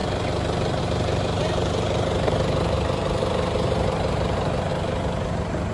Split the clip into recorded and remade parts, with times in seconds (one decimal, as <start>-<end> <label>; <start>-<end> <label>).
0.0-0.8 recorded; 0.8-4.7 remade; 4.7-5.7 recorded

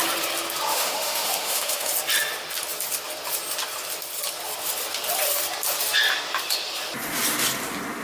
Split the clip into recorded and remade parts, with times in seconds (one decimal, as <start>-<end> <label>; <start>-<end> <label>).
0.0-0.7 recorded; 0.7-1.9 remade; 1.9-8.0 recorded